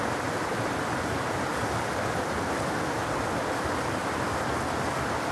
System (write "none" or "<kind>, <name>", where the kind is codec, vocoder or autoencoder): none